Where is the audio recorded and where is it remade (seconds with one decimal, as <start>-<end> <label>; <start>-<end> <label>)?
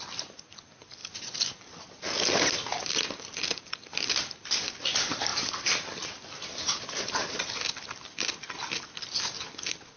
0.0-10.0 recorded